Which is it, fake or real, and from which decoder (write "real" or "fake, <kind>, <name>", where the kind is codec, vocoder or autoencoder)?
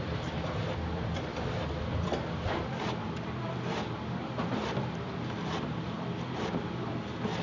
fake, vocoder, BigVGAN v2